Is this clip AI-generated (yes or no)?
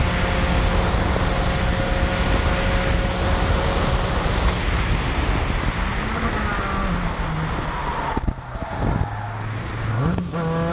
no